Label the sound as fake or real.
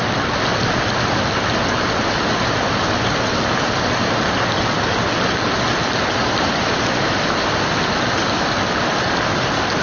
real